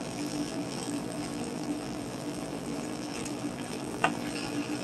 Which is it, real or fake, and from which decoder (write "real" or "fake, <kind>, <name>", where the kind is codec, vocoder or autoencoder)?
fake, vocoder, BigVGAN v2